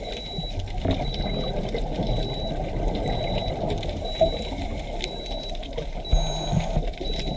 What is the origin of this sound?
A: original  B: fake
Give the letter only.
A